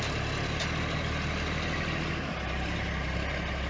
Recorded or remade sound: recorded